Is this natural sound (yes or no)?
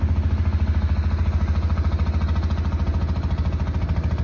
yes